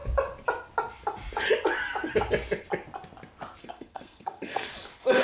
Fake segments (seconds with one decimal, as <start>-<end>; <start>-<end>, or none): 3.6-4.7